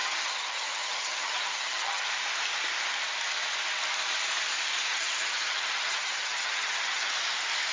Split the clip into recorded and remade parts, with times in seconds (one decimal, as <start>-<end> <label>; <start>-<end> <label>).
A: 0.0-2.1 remade; 2.1-4.9 recorded; 4.9-7.1 remade; 7.1-7.7 recorded